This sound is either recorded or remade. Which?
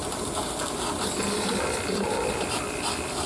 recorded